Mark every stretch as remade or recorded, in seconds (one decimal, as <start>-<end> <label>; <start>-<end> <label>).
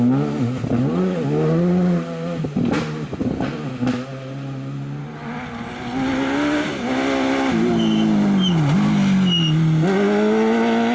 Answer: 0.0-10.9 recorded